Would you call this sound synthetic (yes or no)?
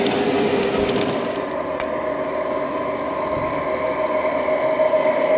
no